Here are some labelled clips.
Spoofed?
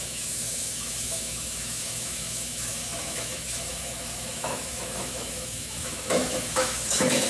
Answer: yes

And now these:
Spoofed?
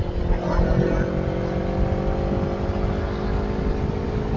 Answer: no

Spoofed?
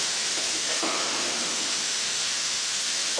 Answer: yes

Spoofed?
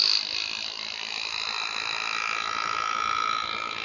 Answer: no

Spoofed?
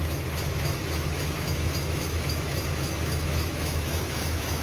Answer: yes